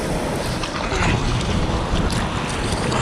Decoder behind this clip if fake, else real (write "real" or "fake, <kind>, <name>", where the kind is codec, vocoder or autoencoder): real